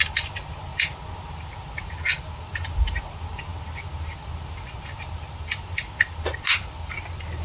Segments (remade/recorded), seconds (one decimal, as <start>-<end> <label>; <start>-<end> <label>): 0.0-7.4 recorded